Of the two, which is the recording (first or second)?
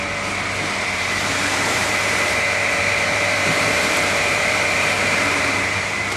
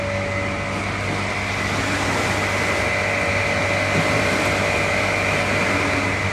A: second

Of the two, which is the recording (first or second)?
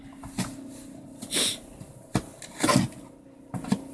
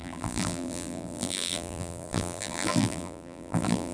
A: first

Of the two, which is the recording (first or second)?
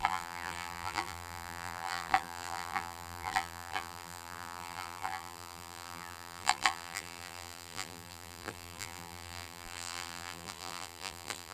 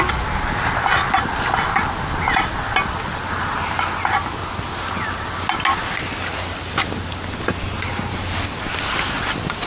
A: second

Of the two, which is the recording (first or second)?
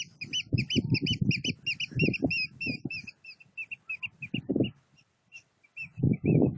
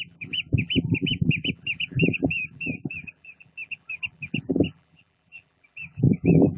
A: first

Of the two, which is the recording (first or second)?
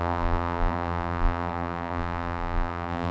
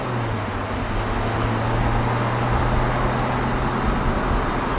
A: second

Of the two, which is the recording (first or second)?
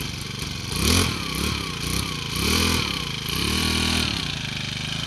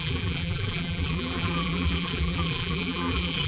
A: first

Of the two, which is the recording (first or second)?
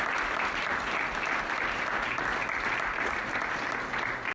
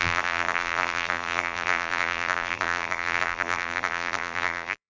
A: first